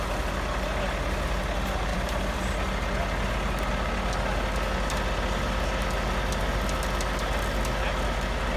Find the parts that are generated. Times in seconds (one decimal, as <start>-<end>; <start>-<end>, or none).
1.9-2.4